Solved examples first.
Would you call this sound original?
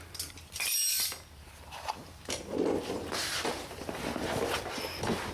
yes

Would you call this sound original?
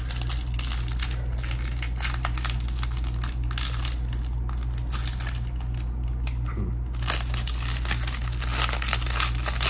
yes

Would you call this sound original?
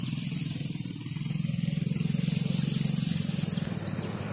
no